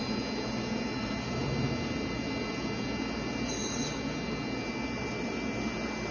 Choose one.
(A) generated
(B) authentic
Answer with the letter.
B